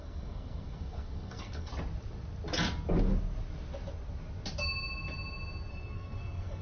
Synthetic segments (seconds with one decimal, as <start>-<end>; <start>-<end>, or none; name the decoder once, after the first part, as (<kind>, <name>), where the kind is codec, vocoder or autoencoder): 0.0-1.7 (codec, SNAC); 5.7-6.6